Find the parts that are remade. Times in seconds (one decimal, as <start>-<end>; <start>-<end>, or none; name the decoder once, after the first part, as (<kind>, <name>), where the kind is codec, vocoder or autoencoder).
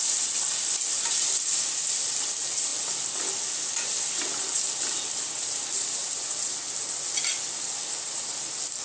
none